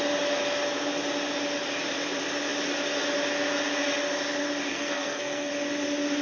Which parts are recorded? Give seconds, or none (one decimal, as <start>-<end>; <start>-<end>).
0.0-4.7; 5.5-6.2